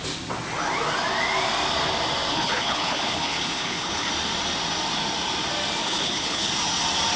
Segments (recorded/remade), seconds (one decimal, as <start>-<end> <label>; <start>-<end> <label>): 0.0-2.3 recorded; 2.3-4.1 remade; 4.1-5.8 recorded; 5.8-6.5 remade; 6.5-7.2 recorded